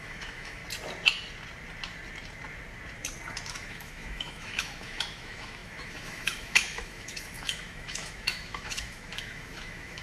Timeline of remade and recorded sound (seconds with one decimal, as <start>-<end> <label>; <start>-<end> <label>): 0.0-0.6 remade; 0.6-3.5 recorded; 3.5-10.0 remade